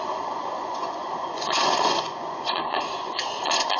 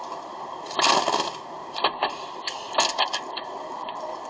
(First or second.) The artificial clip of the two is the first